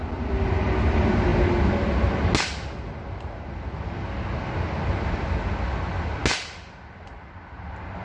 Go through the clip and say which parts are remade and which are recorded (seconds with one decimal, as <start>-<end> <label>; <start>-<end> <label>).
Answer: 0.0-8.0 recorded